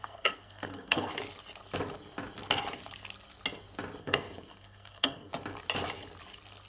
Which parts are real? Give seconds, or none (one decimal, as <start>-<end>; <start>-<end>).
1.1-4.0; 5.3-6.7